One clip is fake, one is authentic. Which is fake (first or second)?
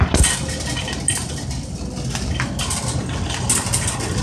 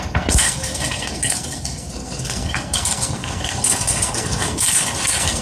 second